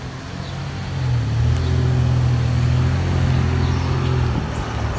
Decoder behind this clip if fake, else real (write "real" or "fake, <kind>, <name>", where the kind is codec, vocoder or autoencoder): real